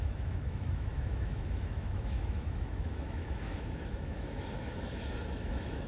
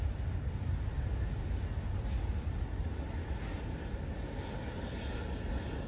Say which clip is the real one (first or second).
second